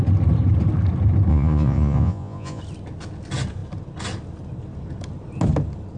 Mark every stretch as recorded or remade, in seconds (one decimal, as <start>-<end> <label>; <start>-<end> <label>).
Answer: 0.0-1.3 recorded; 1.3-2.6 remade; 2.6-6.0 recorded